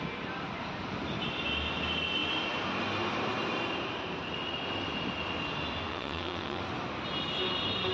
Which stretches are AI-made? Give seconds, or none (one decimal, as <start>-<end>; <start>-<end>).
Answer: 5.9-6.6